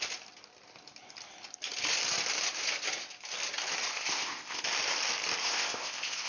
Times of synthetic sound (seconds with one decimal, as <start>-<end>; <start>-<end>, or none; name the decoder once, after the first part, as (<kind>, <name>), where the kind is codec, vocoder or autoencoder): 3.9-4.6 (codec, ZipCodec); 5.4-6.3